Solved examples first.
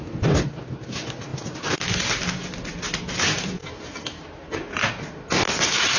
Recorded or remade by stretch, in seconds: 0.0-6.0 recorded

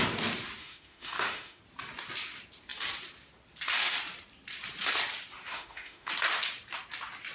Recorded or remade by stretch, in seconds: 0.0-0.6 recorded; 0.6-1.6 remade; 1.6-5.5 recorded; 5.5-6.1 remade; 6.1-7.3 recorded

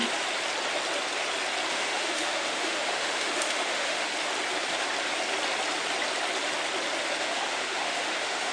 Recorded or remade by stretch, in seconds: 0.0-1.7 recorded; 1.7-4.1 remade; 4.1-7.2 recorded; 7.2-8.5 remade